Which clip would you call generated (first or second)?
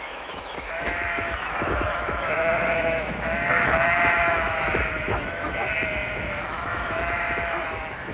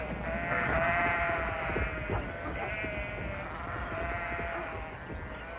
first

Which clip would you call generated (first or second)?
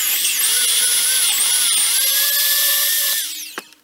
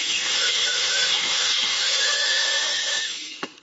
second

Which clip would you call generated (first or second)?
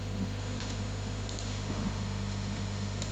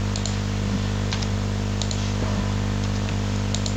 first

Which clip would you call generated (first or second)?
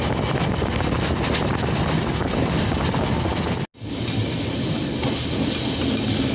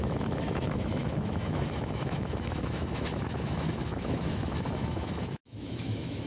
second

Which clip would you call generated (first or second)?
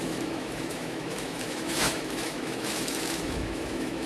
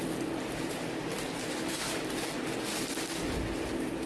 first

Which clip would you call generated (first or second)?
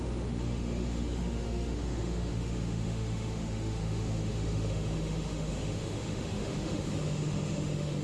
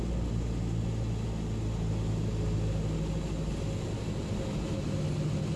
first